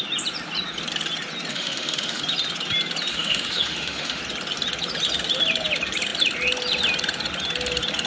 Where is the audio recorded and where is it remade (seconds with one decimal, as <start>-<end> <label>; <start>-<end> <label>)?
0.0-1.5 recorded; 1.5-2.2 remade; 2.2-3.1 recorded; 3.1-4.2 remade; 4.2-8.1 recorded